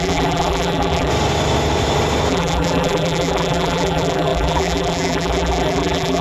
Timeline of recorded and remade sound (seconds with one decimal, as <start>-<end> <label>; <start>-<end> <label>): 0.0-1.1 remade; 1.1-2.3 recorded; 2.3-6.2 remade